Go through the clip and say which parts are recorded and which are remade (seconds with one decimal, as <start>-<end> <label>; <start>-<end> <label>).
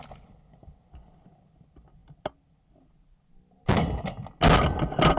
0.0-5.2 recorded